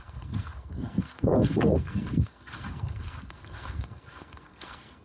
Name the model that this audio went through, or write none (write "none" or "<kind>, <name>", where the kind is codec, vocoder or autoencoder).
codec, SNAC